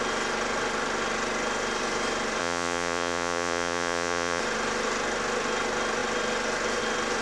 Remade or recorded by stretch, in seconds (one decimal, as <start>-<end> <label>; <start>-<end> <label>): 0.0-2.4 recorded; 2.4-4.4 remade; 4.4-7.2 recorded